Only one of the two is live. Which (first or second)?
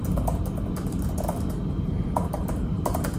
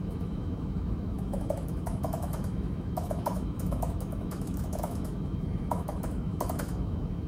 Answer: first